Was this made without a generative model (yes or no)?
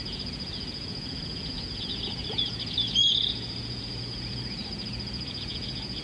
no